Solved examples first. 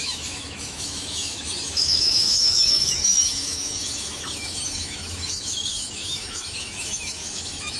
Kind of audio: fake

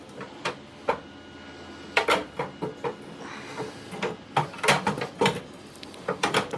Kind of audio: real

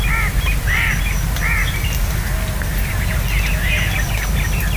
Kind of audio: real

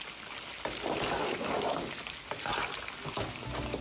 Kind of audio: real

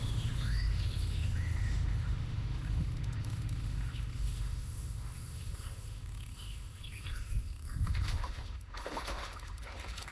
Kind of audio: fake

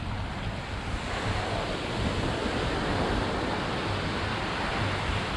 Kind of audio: real